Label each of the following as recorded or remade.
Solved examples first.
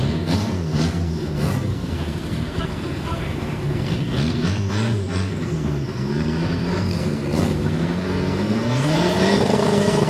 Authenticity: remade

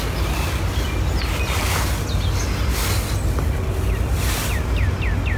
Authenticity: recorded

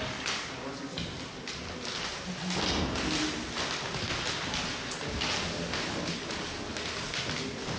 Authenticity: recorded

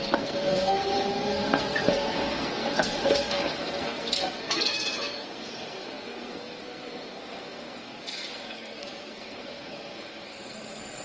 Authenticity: remade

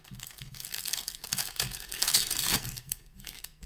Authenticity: remade